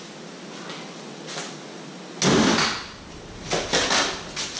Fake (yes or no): no